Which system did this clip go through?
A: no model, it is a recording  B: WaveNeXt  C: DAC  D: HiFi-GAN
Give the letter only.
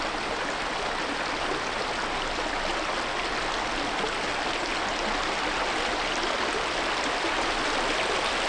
A